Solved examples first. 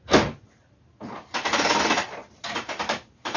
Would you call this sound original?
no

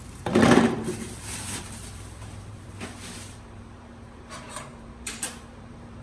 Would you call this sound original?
no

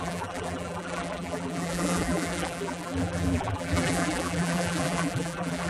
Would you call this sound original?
no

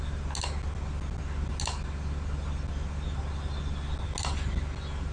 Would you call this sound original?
yes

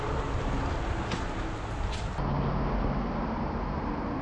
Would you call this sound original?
yes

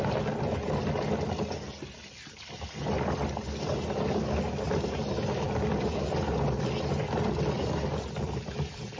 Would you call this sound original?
yes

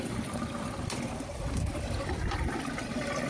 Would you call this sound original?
no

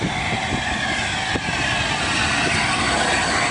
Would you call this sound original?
yes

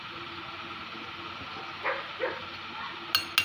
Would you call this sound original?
yes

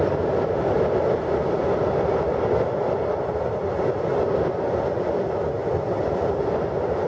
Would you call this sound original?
yes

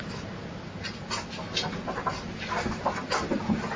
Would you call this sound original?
yes